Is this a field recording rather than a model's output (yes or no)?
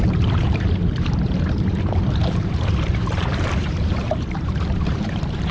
no